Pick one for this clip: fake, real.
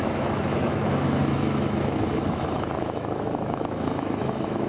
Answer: fake